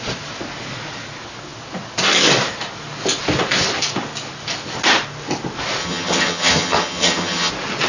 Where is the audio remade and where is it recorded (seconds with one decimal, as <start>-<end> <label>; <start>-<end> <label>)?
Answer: 0.0-5.8 recorded; 5.8-7.5 remade; 7.5-7.9 recorded

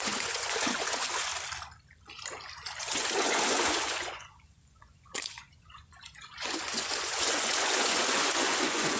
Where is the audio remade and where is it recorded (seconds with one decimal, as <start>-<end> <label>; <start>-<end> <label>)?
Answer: 0.0-1.3 remade; 1.3-2.8 recorded; 2.8-9.0 remade